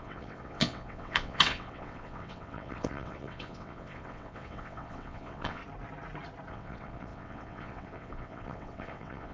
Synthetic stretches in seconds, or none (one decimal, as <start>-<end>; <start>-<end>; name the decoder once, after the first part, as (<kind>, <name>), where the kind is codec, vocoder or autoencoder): 0.0-5.6 (vocoder, WaveNeXt); 6.5-9.3